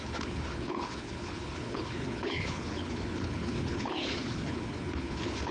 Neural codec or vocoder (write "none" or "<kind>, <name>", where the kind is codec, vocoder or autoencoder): codec, HILCodec